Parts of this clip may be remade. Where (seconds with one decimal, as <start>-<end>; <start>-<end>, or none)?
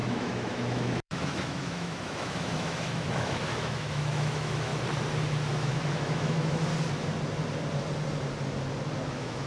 0.0-4.7; 5.5-6.7; 9.1-9.5